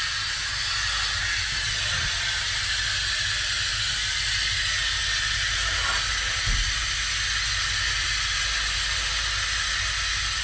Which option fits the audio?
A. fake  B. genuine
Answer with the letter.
B